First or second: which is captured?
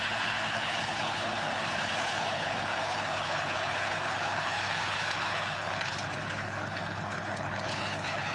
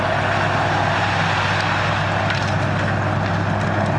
second